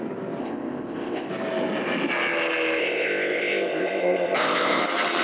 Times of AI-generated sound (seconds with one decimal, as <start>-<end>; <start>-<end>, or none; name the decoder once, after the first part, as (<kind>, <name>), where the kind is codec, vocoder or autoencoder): 0.4-1.3 (codec, ZipCodec); 2.8-4.8